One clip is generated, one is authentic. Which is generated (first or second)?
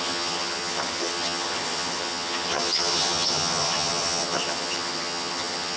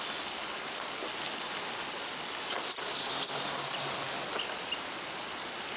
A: first